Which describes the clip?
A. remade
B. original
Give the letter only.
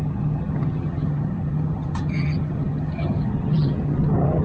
A